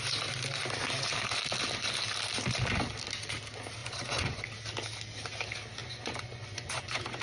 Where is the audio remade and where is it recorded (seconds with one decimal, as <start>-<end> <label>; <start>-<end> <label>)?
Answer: 0.0-3.8 recorded; 3.8-4.4 remade; 4.4-5.8 recorded; 5.8-7.2 remade